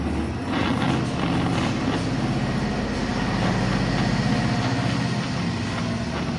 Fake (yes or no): no